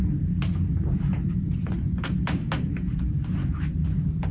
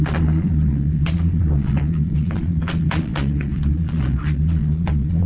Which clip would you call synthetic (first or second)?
second